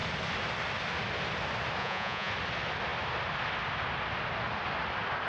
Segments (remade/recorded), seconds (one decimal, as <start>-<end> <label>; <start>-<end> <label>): 0.0-1.8 recorded; 1.8-2.3 remade; 2.3-5.3 recorded